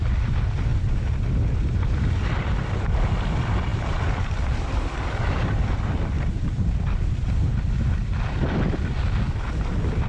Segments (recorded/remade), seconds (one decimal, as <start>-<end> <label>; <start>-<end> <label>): 0.0-10.1 remade